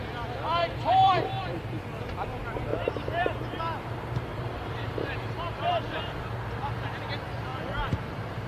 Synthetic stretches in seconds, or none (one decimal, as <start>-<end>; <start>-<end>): 0.6-1.8; 2.7-3.6; 4.3-5.7; 7.5-8.5